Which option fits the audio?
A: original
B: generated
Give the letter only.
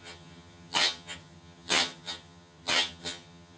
B